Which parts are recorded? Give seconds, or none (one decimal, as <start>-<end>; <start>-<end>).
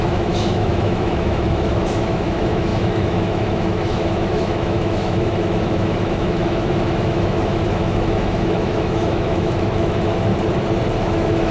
10.3-11.0